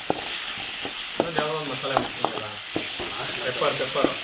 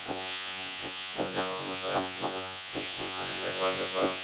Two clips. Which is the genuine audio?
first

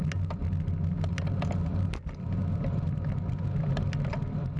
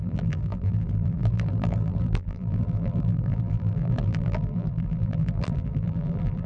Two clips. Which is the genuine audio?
first